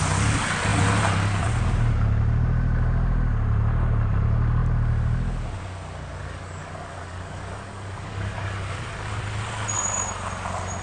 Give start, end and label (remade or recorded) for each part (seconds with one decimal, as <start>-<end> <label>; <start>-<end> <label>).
0.0-6.2 recorded; 6.2-9.2 remade; 9.2-10.8 recorded